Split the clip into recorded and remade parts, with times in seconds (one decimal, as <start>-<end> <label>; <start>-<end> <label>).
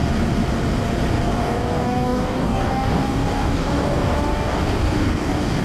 0.0-1.1 recorded; 1.1-5.6 remade